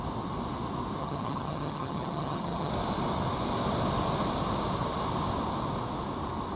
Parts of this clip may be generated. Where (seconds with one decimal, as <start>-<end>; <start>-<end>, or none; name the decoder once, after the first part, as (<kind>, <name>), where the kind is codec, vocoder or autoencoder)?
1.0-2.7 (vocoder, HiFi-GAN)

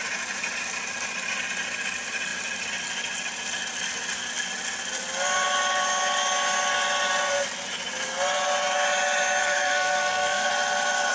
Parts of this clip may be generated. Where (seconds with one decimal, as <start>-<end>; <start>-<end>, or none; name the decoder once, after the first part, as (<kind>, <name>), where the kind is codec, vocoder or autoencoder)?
9.4-10.5 (codec, SNAC)

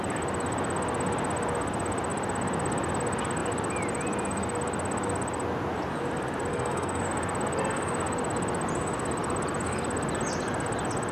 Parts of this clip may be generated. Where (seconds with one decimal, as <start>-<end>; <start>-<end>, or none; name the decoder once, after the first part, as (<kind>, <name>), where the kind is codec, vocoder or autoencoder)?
6.5-7.0 (codec, SNAC)